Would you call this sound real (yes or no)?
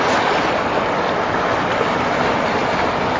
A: yes